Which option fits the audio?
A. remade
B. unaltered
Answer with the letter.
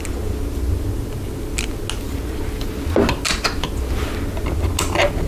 B